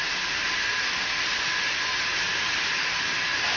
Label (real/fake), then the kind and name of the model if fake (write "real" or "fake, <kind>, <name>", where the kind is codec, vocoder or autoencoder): real